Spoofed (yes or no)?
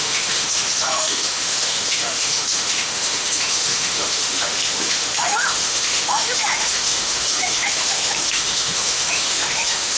yes